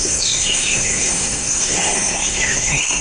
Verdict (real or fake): fake